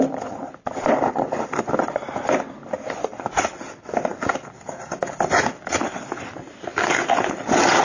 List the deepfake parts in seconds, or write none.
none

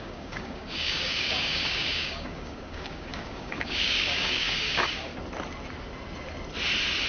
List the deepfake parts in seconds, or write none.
0.0-5.1 (codec, DAC)

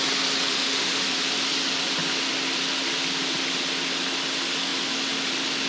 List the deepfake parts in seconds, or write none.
0.5-1.0 (autoencoder, DAC-VAE)